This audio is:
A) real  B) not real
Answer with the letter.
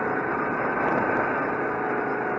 A